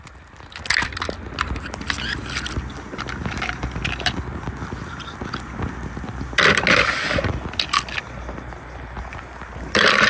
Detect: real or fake real